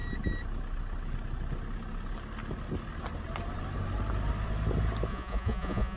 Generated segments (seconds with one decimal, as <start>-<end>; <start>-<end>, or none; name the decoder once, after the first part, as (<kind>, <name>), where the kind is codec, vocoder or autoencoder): 5.1-6.0 (vocoder, Vocos)